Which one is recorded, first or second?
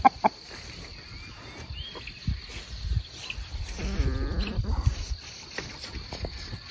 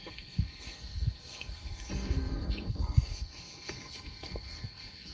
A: first